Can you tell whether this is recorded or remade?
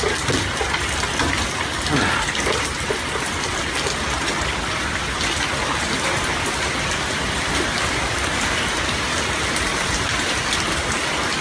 recorded